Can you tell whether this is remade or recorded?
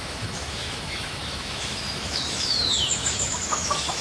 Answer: remade